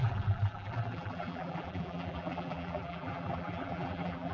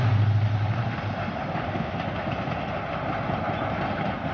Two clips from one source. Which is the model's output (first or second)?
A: first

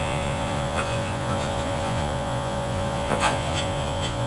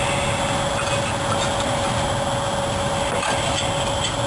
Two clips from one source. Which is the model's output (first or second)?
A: first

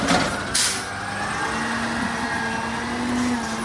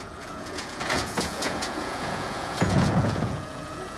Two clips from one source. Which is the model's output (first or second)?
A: second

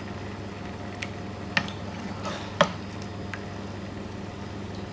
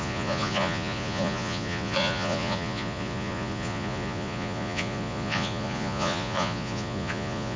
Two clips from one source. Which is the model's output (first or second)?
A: second